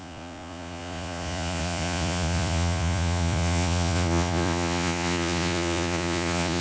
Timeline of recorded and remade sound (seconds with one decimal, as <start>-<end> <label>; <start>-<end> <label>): 0.0-6.6 remade